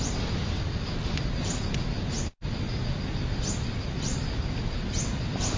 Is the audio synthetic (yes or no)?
no